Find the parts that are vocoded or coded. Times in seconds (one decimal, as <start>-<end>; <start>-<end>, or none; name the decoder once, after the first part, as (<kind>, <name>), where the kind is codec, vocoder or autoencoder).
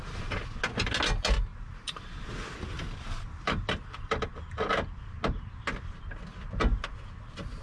1.5-5.0 (vocoder, BigVGAN v2)